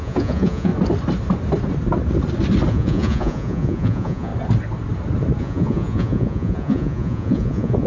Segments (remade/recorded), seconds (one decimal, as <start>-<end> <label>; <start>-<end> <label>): 0.0-0.7 remade; 0.7-2.7 recorded; 2.7-4.3 remade; 4.3-5.4 recorded; 5.4-7.9 remade